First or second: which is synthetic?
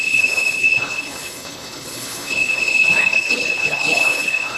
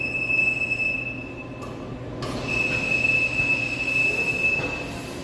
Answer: first